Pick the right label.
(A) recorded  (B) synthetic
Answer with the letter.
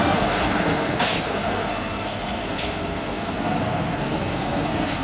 B